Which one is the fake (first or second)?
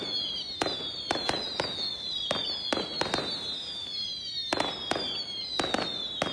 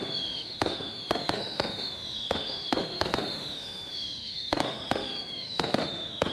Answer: second